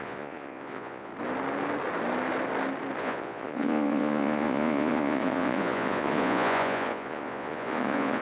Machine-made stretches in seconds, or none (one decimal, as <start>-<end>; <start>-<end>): 0.0-1.1; 3.0-8.2